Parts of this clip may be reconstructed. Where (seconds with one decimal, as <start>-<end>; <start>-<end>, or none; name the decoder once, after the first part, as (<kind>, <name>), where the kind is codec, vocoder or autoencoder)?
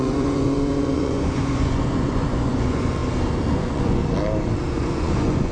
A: 0.0-3.0 (vocoder, Vocos); 3.5-4.0; 4.7-5.5